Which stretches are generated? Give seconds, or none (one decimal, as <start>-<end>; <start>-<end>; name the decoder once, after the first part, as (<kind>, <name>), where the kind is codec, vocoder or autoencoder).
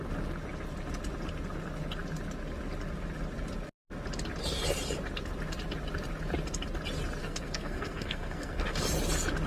7.2-8.8 (codec, SNAC)